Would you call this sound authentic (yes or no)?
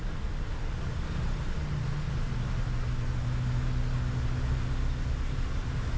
yes